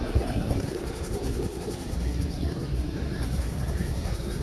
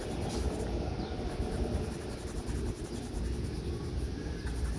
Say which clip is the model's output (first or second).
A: first